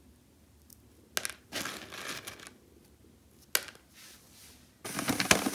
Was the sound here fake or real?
real